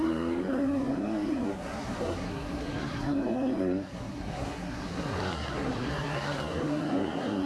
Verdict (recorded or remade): remade